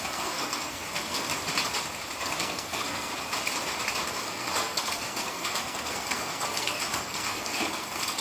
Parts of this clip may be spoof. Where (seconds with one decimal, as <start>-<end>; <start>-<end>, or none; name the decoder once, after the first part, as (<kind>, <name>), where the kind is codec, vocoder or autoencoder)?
0.0-1.3 (codec, SNAC); 2.2-3.1; 4.1-8.2